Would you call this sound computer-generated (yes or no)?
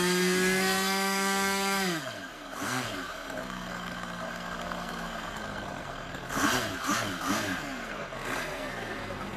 yes